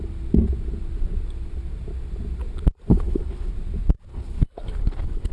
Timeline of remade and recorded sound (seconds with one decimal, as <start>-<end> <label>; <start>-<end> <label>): 0.0-2.9 recorded; 2.9-3.5 remade; 3.5-4.1 recorded; 4.1-5.3 remade